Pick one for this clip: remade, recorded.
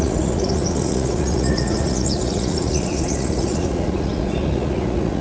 remade